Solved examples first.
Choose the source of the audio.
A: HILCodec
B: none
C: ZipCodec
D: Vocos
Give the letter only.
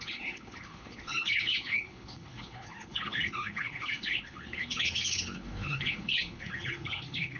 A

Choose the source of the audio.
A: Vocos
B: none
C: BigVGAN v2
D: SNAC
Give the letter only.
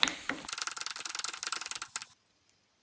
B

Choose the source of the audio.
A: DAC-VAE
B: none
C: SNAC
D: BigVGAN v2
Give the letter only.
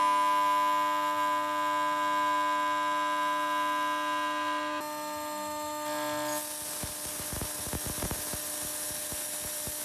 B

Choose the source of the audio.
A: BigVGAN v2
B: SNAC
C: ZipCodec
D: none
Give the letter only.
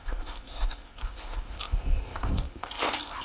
C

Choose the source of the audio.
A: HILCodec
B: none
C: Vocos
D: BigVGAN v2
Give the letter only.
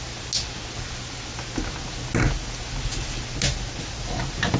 B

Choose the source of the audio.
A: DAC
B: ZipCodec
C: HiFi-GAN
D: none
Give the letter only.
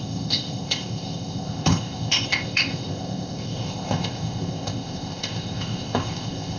B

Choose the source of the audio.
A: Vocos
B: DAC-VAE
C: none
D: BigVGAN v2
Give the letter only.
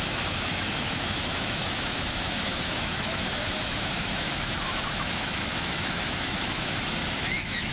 B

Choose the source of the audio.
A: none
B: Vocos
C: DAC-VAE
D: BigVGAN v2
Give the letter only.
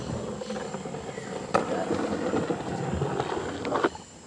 A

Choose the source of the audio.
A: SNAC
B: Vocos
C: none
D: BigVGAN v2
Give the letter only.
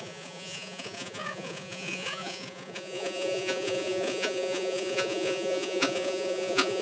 B